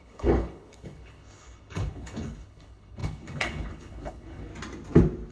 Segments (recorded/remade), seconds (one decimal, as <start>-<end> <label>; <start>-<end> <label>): 0.0-4.5 remade; 4.5-5.3 recorded